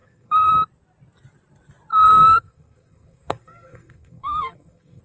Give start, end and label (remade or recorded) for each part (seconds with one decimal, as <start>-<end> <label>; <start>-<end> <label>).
0.0-0.5 remade; 0.5-1.9 recorded; 1.9-5.0 remade